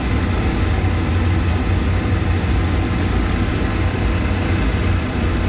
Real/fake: real